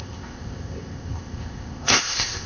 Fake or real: fake